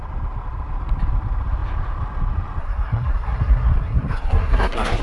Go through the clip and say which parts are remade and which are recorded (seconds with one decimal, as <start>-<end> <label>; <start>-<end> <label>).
0.0-2.6 recorded; 2.6-5.0 remade